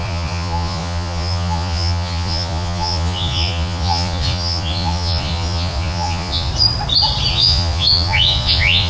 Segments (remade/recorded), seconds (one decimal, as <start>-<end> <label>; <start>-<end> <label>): 0.0-6.5 remade; 6.5-7.3 recorded; 7.3-8.9 remade